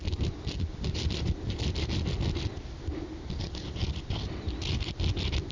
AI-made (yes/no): no